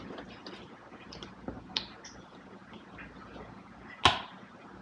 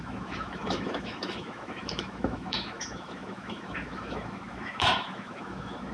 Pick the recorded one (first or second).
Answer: first